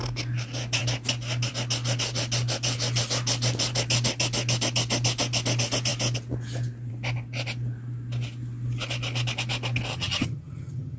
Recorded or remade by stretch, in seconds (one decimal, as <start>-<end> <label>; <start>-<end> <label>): 0.0-9.9 recorded; 9.9-11.0 remade